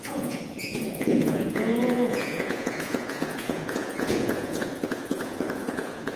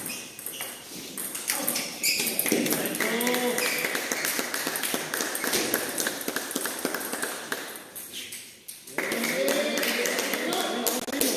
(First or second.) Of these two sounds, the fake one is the first